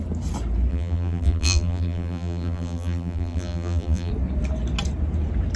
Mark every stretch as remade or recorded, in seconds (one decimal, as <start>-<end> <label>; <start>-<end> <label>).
0.0-0.7 recorded; 0.7-4.1 remade; 4.1-5.6 recorded